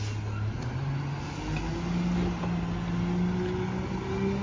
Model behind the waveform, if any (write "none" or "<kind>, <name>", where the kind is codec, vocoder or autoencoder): none